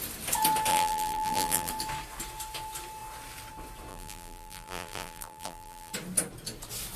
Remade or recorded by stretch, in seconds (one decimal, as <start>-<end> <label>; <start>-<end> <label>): 0.0-0.7 recorded; 0.7-1.7 remade; 1.7-3.9 recorded; 3.9-5.9 remade; 5.9-7.0 recorded